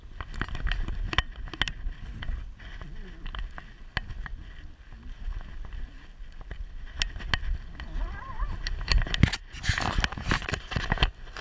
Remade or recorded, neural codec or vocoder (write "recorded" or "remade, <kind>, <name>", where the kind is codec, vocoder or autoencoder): recorded